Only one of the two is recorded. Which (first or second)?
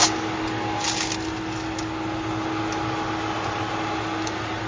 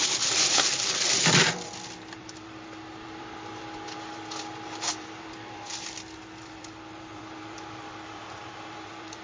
first